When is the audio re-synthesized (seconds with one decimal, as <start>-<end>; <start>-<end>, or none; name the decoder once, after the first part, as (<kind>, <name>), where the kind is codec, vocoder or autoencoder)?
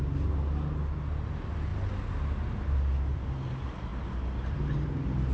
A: none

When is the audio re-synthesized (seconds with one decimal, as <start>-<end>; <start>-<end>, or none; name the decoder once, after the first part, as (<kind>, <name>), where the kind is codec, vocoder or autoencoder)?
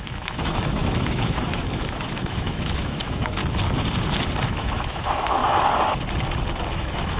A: 0.0-3.4 (autoencoder, DAC-VAE); 4.5-5.4; 6.7-7.2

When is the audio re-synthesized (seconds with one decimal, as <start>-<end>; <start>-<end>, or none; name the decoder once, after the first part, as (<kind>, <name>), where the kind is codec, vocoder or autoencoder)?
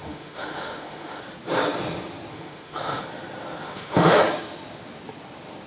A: 0.0-1.2 (autoencoder, DAC-VAE); 2.3-3.0; 3.7-4.2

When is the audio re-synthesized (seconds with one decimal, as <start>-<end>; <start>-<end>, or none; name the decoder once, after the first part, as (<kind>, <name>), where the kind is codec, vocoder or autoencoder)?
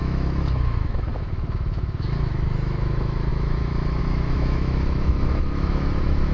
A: 0.0-6.3 (autoencoder, DAC-VAE)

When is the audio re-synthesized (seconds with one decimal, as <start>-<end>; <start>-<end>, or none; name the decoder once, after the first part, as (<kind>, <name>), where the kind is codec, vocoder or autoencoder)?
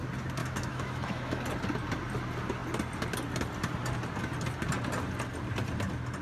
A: 0.4-1.4 (autoencoder, DAC-VAE)